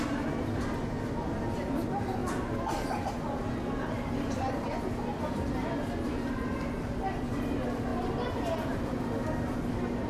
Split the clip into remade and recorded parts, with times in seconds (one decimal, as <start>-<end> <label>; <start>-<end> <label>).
0.0-10.1 recorded